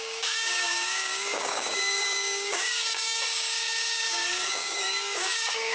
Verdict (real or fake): fake